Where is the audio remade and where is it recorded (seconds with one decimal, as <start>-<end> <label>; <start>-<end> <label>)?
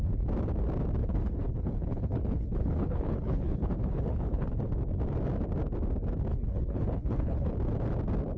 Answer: 0.0-1.0 recorded; 1.0-4.7 remade; 4.7-6.3 recorded; 6.3-7.5 remade; 7.5-8.4 recorded